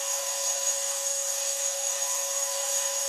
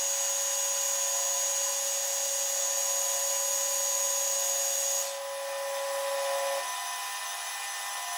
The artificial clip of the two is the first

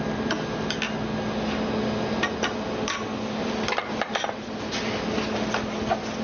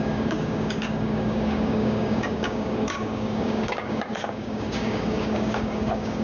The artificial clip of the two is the second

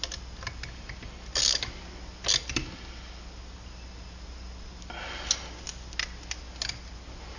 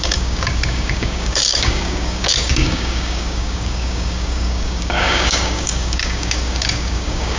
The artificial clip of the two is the second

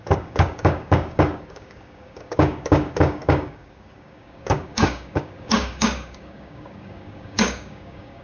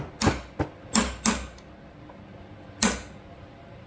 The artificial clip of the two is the first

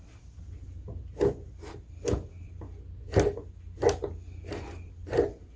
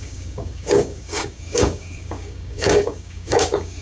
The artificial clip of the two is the second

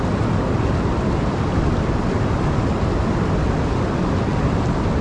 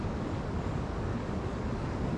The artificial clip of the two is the second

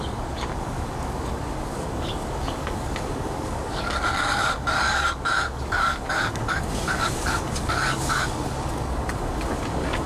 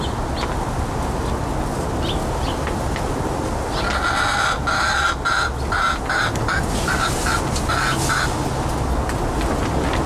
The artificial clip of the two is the first